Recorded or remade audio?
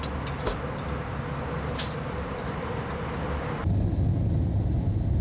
recorded